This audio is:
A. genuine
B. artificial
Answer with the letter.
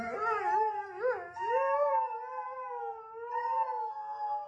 A